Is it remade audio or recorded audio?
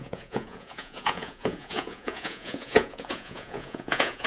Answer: remade